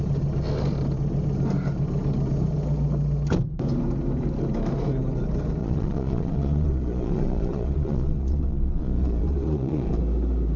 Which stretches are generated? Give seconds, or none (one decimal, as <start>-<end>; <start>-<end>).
5.6-10.0